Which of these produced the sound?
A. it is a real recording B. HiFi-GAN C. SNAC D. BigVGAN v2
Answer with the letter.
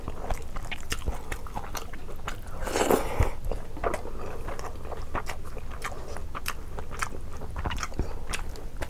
A